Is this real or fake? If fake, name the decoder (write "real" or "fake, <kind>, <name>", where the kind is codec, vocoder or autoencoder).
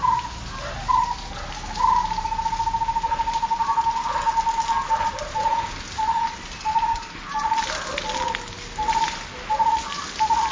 real